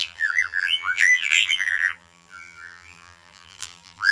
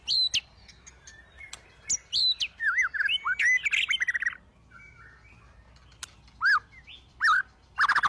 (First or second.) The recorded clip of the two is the second